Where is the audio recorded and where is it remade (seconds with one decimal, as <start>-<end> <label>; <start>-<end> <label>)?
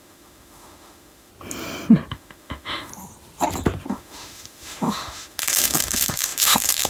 0.0-1.3 remade; 1.3-2.1 recorded; 2.1-2.9 remade; 2.9-3.9 recorded; 3.9-6.9 remade